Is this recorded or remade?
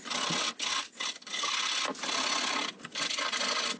recorded